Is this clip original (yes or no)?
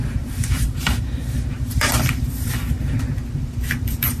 no